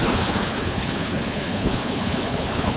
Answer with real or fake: fake